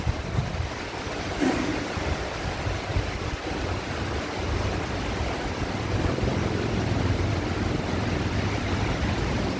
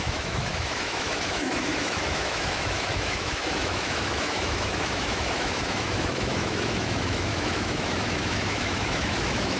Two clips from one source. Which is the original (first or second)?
first